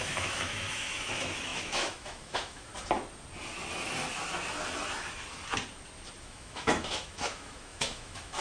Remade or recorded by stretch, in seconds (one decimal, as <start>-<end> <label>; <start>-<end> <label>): 0.0-2.7 remade; 2.7-6.2 recorded; 6.2-8.4 remade